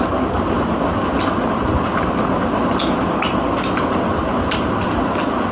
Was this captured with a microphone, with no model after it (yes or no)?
yes